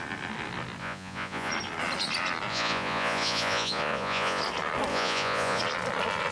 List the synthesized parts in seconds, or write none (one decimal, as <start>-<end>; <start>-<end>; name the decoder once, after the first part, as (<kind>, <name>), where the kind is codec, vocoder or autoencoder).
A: 0.8-1.5 (vocoder, Vocos); 2.5-4.4; 4.9-5.6